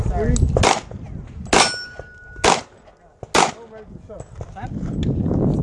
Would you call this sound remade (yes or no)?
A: no